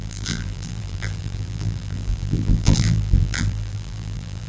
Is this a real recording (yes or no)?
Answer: no